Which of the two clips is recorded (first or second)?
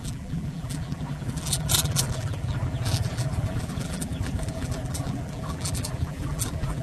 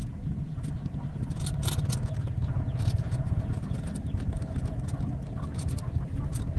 second